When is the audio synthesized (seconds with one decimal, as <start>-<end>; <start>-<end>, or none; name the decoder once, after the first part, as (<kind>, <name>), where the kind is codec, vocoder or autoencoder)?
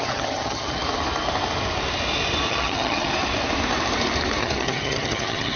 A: 0.0-0.8 (vocoder, HiFi-GAN); 2.5-3.1; 4.4-5.6